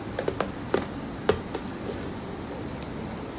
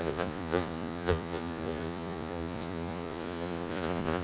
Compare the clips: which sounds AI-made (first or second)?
second